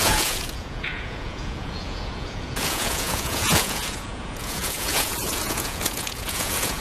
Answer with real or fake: fake